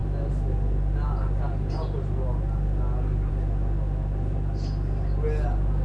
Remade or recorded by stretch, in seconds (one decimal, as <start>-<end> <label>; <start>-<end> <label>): 0.0-5.8 recorded